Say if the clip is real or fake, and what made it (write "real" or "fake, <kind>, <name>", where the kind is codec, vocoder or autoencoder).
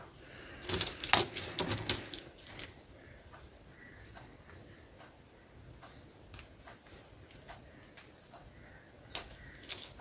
real